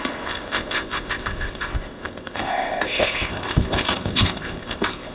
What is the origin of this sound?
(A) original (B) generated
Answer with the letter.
B